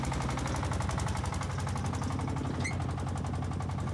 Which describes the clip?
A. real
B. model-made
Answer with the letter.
A